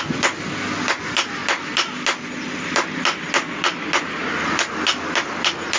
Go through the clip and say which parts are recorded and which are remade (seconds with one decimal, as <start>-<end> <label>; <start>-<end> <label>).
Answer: 0.0-5.8 recorded